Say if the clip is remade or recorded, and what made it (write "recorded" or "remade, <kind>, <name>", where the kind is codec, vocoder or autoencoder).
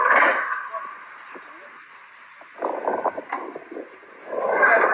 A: remade, vocoder, BigVGAN v2